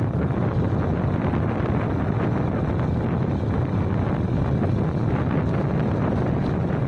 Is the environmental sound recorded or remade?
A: recorded